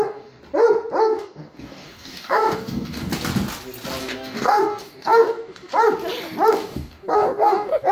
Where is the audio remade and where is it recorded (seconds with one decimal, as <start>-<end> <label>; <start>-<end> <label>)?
0.0-0.4 remade; 0.4-1.0 recorded; 1.0-3.1 remade; 3.1-4.0 recorded; 4.0-5.7 remade; 5.7-6.5 recorded; 6.5-7.9 remade